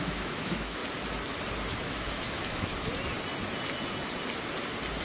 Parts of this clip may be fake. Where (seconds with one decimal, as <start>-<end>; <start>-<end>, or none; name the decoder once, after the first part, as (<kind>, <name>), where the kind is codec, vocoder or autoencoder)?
0.0-0.8 (autoencoder, DAC-VAE); 1.7-2.7